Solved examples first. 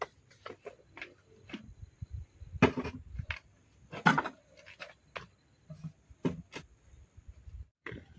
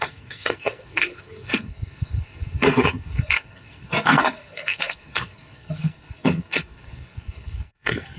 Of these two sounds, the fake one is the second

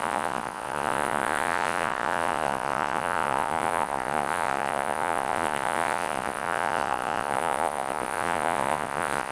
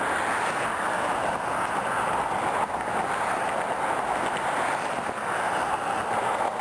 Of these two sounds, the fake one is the first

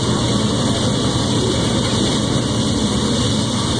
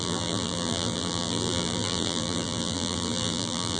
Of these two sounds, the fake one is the second